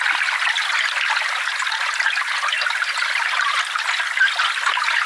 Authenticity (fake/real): real